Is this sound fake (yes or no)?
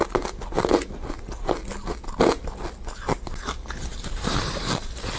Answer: no